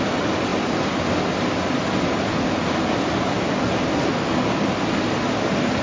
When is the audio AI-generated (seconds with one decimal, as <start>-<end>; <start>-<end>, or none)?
none